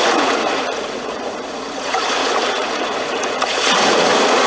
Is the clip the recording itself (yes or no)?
no